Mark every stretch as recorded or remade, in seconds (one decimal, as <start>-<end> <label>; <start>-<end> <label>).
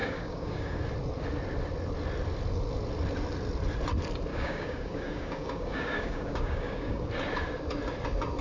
0.0-0.8 remade; 0.8-4.3 recorded; 4.3-7.0 remade; 7.0-8.4 recorded